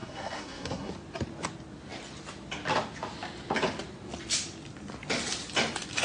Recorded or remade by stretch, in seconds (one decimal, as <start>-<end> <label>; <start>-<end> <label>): 0.0-0.9 remade; 0.9-6.0 recorded

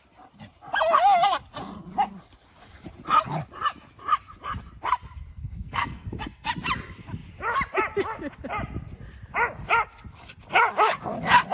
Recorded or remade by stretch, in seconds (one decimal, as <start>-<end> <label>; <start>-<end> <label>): 0.0-5.3 recorded; 5.3-6.5 remade; 6.5-11.5 recorded

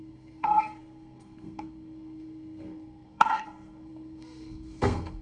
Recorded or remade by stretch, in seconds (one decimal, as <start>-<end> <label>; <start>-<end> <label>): 0.0-5.2 remade